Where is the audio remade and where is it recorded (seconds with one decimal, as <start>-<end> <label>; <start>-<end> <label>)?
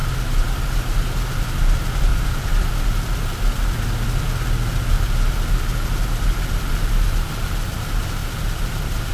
0.0-0.5 remade; 0.5-2.1 recorded; 2.1-2.7 remade; 2.7-8.2 recorded; 8.2-9.1 remade